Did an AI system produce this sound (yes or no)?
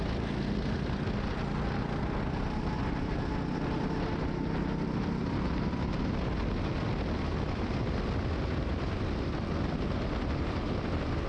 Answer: no